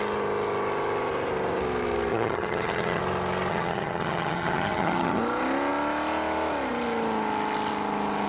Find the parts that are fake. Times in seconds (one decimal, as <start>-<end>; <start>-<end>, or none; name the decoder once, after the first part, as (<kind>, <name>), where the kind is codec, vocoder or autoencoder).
2.1-3.0 (vocoder, HiFi-GAN); 3.5-5.2